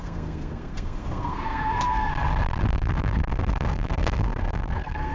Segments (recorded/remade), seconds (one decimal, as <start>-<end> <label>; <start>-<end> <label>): 0.0-2.1 remade; 2.1-2.6 recorded; 2.6-5.1 remade